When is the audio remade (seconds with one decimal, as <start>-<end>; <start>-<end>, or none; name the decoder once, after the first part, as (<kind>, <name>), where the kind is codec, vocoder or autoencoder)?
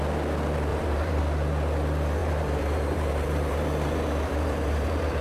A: 0.7-1.2 (vocoder, BigVGAN v2); 2.2-5.2